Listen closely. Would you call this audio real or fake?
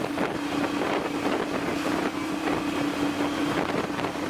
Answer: real